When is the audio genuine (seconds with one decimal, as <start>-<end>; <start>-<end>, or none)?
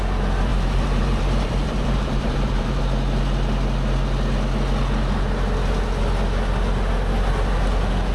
0.0-0.5; 2.8-8.1